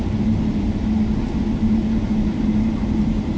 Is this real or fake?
real